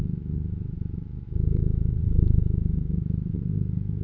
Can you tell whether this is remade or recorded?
remade